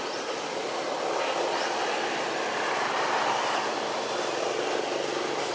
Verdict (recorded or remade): recorded